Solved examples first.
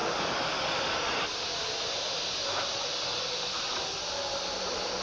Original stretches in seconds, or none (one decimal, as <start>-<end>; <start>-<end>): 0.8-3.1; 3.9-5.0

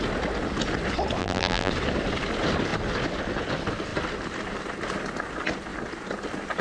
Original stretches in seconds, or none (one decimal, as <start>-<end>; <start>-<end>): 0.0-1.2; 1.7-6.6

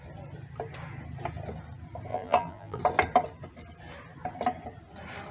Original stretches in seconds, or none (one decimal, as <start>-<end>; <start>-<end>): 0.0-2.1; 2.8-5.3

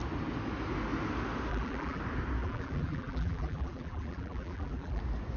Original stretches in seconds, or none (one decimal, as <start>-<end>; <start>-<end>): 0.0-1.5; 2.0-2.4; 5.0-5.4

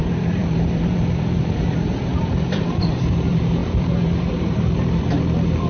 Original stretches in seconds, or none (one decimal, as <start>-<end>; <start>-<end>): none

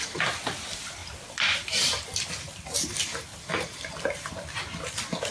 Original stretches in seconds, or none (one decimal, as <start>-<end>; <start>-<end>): 0.0-1.0; 1.8-5.3

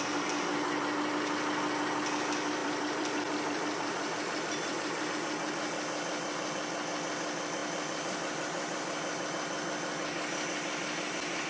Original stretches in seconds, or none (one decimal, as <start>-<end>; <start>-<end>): 0.0-2.6; 5.1-7.6; 9.3-11.5